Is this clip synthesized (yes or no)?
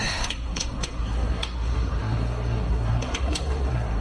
yes